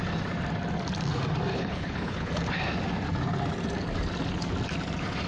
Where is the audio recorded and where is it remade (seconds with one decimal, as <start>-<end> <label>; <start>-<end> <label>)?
0.0-1.5 recorded; 1.5-2.3 remade; 2.3-5.3 recorded